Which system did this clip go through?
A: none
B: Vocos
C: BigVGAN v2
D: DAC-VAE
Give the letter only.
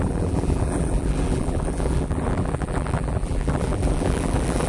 C